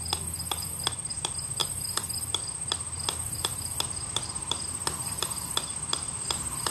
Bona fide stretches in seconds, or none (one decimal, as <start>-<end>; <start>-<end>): 0.0-6.7